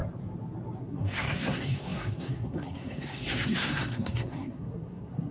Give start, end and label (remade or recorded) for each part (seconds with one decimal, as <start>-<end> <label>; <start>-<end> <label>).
0.0-0.8 recorded; 0.8-5.3 remade